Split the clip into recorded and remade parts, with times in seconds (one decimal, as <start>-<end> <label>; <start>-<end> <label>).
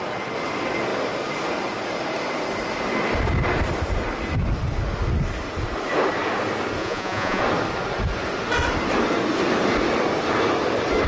0.0-6.8 recorded; 6.8-7.4 remade; 7.4-11.1 recorded